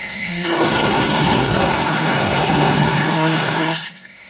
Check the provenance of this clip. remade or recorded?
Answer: remade